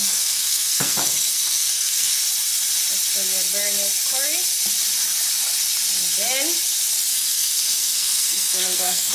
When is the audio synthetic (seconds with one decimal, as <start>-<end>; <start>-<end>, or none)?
0.0-2.2; 7.1-9.1